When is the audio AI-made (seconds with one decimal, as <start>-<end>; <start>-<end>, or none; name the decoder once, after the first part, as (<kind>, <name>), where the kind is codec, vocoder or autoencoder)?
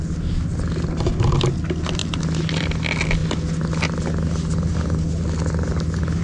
none